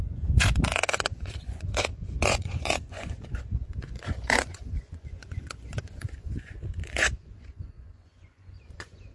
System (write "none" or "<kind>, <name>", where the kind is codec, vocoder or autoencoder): vocoder, Vocos